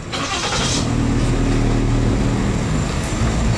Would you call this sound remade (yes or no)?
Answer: no